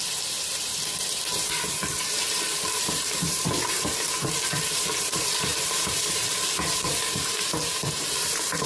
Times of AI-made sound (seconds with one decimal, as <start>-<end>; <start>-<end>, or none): 0.0-0.7; 1.6-8.7